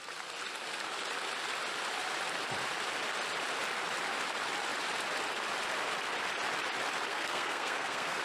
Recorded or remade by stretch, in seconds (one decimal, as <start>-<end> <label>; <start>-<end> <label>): 0.0-7.1 recorded; 7.1-8.2 remade